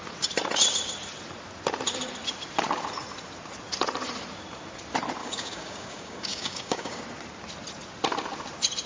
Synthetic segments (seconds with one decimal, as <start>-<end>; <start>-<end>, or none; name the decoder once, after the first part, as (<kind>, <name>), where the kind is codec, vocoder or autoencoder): 5.2-7.0 (codec, DAC)